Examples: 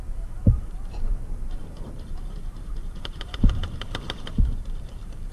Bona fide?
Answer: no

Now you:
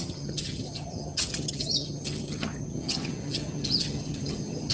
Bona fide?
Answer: no